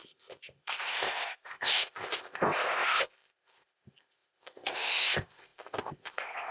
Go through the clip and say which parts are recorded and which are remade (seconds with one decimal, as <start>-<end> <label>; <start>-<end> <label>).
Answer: 0.0-6.5 remade